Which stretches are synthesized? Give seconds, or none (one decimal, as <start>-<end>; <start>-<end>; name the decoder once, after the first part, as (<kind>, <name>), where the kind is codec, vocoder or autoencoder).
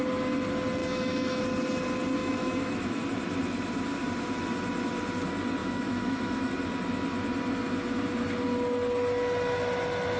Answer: 0.8-1.4 (autoencoder, DAC-VAE); 2.2-3.0; 5.6-6.5